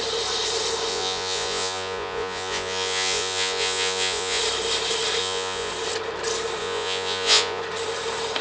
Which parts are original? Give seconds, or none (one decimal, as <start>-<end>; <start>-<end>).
0.0-0.9; 4.4-5.2; 5.7-6.6; 7.6-8.4